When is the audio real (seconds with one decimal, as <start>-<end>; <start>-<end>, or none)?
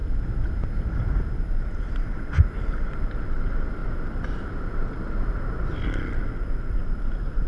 0.0-7.5